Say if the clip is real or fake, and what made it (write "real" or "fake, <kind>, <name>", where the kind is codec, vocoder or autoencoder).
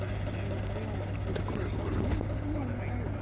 real